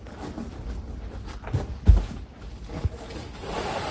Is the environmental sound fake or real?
real